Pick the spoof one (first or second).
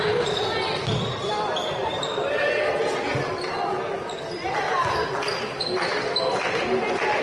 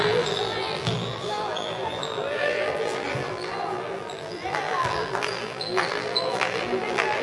second